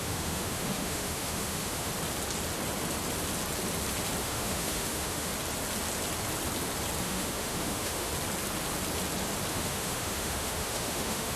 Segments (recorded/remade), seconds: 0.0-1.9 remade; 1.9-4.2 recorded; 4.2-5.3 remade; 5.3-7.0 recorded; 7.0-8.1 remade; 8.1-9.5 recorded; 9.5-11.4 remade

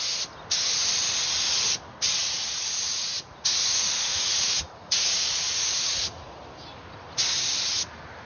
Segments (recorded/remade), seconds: 0.0-2.2 recorded; 2.2-6.4 remade; 6.4-8.2 recorded

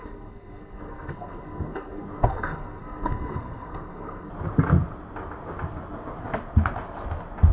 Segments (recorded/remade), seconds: 0.0-4.3 remade; 4.3-7.5 recorded

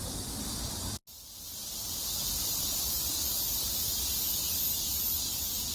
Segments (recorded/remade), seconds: 0.0-5.7 recorded

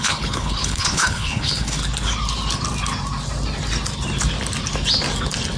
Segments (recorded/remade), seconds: 0.0-1.8 remade; 1.8-5.6 recorded

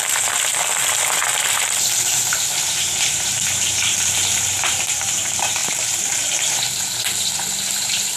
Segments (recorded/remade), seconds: 0.0-0.5 remade; 0.5-1.2 recorded; 1.2-8.2 remade

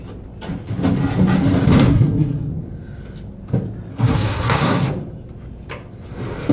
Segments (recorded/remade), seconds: 0.0-1.9 recorded; 1.9-2.5 remade; 2.5-3.9 recorded; 3.9-4.9 remade; 4.9-6.5 recorded

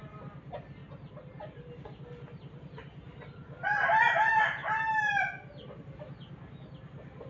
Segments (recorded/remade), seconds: 0.0-7.3 recorded